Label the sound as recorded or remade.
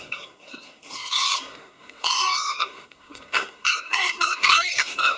remade